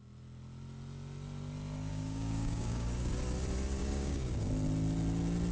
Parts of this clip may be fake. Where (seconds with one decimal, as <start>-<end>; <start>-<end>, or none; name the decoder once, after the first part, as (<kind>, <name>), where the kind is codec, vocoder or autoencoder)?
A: 1.9-3.1 (codec, DAC); 3.8-4.5